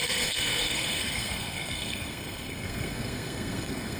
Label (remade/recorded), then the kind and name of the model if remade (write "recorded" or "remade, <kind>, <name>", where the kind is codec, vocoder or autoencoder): remade, codec, SNAC